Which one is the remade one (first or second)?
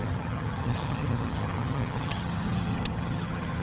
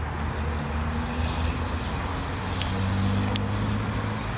first